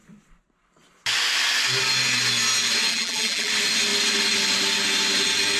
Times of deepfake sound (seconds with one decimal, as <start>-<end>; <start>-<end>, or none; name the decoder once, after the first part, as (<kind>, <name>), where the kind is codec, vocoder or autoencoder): 2.9-3.5 (vocoder, BigVGAN v2)